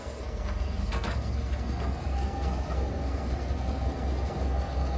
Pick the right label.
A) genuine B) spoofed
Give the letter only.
B